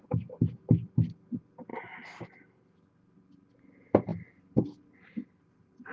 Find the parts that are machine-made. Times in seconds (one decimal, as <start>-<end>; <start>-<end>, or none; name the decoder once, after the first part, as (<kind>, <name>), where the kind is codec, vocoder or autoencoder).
none